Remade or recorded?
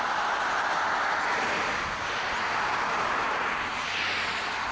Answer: recorded